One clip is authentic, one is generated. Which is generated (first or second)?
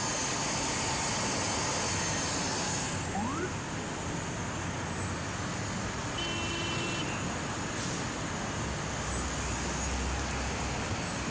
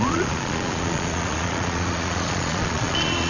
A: second